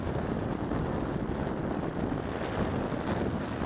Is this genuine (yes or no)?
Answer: yes